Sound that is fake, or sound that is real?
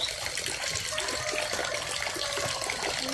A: real